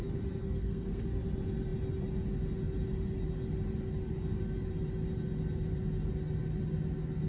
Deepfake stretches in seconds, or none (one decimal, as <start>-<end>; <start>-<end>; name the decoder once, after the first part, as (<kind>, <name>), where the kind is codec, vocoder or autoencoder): 0.4-1.0 (codec, SNAC)